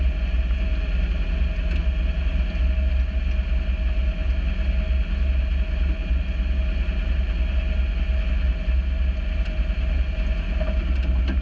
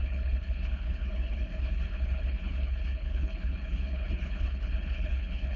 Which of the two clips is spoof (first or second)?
second